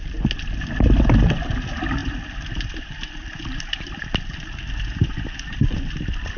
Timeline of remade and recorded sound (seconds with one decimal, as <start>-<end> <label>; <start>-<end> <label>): 0.0-6.4 recorded

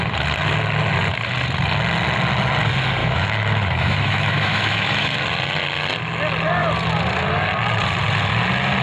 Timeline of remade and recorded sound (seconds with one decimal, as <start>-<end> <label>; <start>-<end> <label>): 0.0-3.0 recorded; 3.0-5.2 remade; 5.2-8.8 recorded

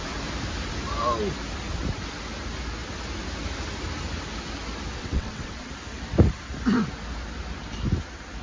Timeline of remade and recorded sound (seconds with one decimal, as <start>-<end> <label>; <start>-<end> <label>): 0.0-5.0 recorded; 5.0-5.7 remade; 5.7-8.4 recorded

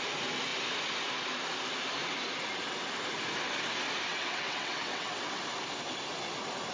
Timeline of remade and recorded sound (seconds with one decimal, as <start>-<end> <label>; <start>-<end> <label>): 0.0-4.1 recorded; 4.1-5.4 remade; 5.4-6.7 recorded

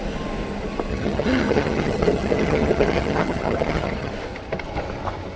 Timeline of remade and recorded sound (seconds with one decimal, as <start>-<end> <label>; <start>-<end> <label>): 0.0-0.9 recorded; 0.9-4.1 remade; 4.1-5.4 recorded

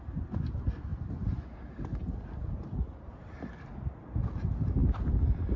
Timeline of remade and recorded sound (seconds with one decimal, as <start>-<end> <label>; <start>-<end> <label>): 0.0-5.6 recorded

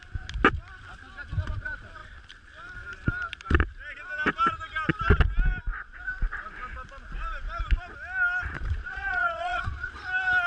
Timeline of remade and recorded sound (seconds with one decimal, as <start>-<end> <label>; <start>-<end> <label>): 0.0-8.8 recorded; 8.8-9.9 remade; 9.9-10.5 recorded

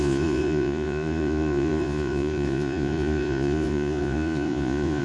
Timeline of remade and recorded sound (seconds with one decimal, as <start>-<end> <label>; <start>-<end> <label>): 0.0-5.0 remade